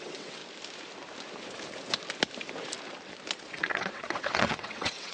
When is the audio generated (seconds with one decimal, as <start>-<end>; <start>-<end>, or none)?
0.0-0.4; 3.5-5.1